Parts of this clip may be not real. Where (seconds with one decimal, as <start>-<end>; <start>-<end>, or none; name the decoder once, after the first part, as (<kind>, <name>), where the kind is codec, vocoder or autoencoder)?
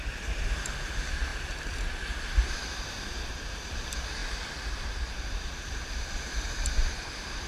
0.0-7.5 (vocoder, BigVGAN v2)